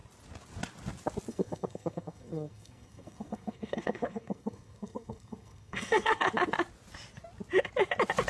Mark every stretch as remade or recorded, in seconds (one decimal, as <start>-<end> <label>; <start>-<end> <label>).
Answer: 0.0-1.3 recorded; 1.3-6.3 remade; 6.3-8.3 recorded